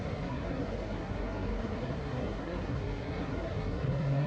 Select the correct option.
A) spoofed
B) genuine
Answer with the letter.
A